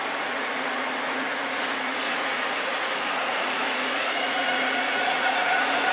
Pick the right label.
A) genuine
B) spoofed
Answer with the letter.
B